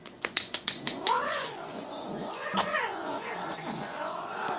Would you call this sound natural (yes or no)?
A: no